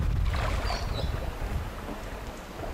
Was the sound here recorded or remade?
recorded